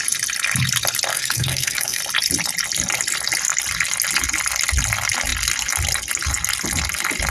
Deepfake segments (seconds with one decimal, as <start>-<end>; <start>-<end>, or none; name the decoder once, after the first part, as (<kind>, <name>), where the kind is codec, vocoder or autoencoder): 1.1-2.0 (codec, SNAC)